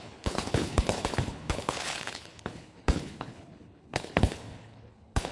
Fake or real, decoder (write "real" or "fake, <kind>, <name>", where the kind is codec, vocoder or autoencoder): fake, codec, HILCodec